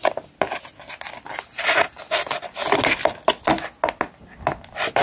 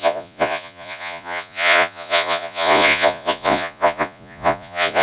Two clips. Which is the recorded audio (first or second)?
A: first